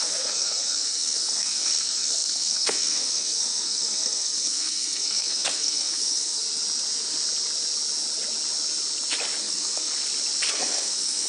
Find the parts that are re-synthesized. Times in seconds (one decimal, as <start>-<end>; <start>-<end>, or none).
0.0-6.4; 9.4-9.9; 10.5-11.3

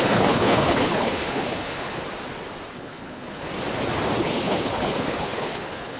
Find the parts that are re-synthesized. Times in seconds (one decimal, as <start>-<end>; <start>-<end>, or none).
0.0-2.0; 2.7-3.5; 4.2-6.0

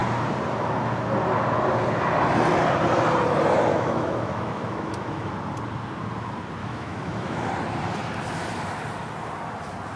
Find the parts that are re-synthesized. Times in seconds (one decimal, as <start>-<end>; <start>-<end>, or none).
3.7-5.3; 6.6-7.5

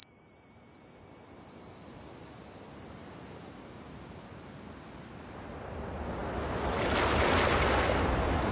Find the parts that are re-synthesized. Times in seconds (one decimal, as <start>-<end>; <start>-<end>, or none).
none

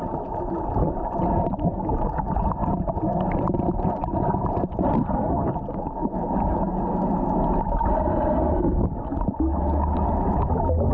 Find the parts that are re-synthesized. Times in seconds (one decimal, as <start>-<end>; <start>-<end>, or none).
none

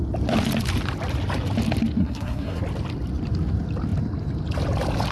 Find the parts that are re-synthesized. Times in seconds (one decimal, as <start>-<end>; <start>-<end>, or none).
2.0-2.6

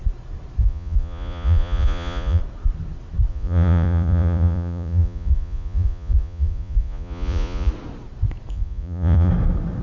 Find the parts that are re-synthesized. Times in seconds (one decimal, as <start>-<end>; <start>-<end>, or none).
0.6-2.4; 3.3-7.7; 8.5-9.3

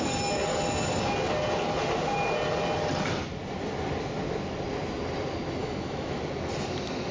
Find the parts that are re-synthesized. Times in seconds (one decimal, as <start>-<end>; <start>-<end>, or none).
5.6-6.2